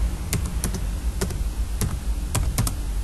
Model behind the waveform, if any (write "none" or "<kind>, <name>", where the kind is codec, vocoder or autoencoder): none